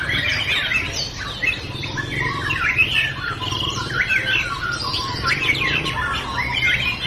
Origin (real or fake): real